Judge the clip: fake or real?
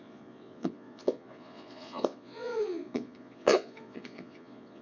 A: fake